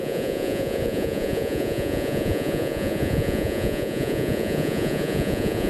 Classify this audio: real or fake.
fake